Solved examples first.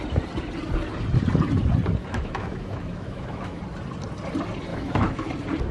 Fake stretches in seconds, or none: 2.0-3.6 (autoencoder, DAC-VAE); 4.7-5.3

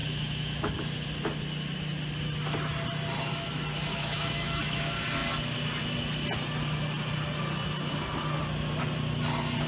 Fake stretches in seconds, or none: 0.0-0.7 (autoencoder, DAC-VAE); 3.9-4.8